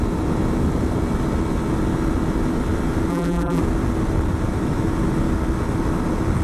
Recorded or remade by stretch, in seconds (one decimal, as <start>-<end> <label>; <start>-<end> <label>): 0.0-3.1 recorded; 3.1-3.6 remade; 3.6-6.4 recorded